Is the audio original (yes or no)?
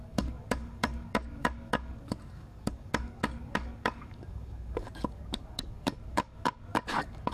no